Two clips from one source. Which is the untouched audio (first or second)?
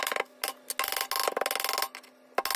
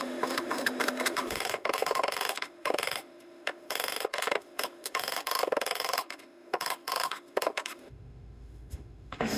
first